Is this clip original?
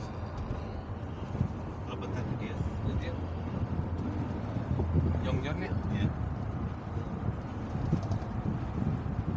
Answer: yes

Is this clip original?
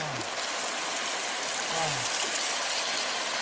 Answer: yes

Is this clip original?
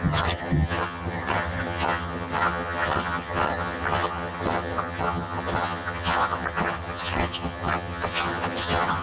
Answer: no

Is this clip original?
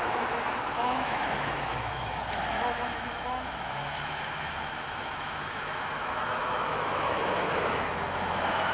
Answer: no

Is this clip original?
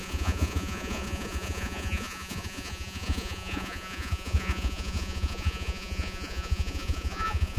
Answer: no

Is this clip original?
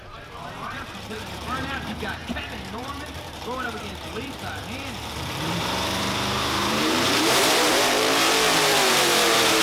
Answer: no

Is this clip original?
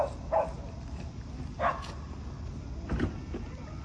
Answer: yes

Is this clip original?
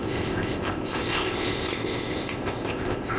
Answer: no